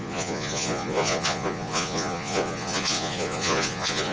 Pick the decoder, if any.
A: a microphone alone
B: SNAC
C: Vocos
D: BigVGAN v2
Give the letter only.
C